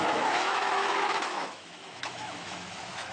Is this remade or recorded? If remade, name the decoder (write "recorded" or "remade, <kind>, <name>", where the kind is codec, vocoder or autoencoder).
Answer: remade, autoencoder, DAC-VAE